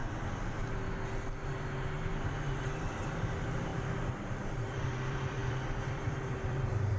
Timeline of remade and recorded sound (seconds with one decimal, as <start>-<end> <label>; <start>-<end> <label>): 0.0-2.6 recorded; 2.6-7.0 remade